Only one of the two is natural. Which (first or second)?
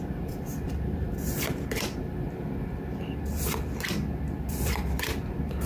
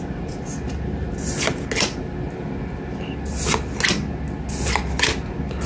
second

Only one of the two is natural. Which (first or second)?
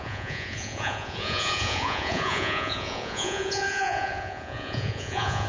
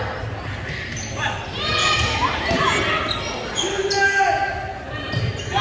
second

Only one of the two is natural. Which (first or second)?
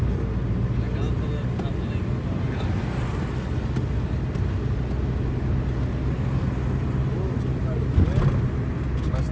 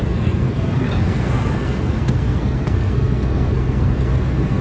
first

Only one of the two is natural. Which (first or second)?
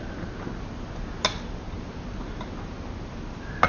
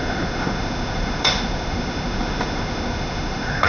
first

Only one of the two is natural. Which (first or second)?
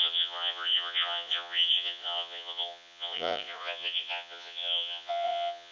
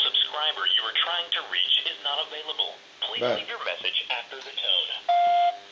second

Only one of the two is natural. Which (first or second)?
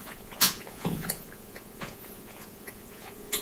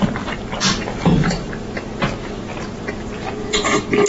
second